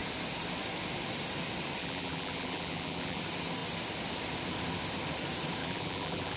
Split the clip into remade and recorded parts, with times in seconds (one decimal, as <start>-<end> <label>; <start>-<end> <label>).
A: 0.0-1.8 recorded; 1.8-3.2 remade; 3.2-5.6 recorded; 5.6-6.4 remade